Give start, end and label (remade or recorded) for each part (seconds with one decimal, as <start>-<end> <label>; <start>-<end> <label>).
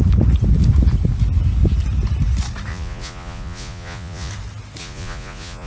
0.0-2.7 recorded; 2.7-4.3 remade; 4.3-4.8 recorded; 4.8-5.7 remade